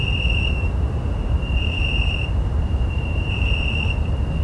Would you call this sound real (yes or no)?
no